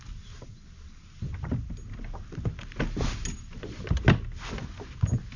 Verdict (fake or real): real